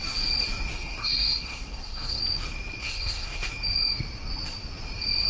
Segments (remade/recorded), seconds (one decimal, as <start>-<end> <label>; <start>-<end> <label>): 0.0-0.7 recorded; 0.7-2.2 remade; 2.2-2.8 recorded; 2.8-3.5 remade; 3.5-5.3 recorded